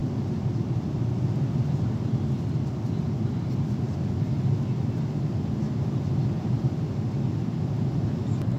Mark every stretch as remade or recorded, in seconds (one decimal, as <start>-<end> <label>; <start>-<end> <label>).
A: 0.0-8.6 recorded